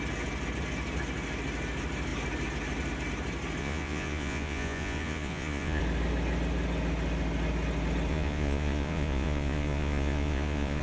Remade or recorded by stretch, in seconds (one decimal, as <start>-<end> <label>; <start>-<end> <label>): 0.0-3.6 recorded; 3.6-5.8 remade; 5.8-8.1 recorded; 8.1-10.8 remade